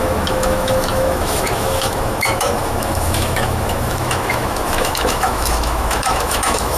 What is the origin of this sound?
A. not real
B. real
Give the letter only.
A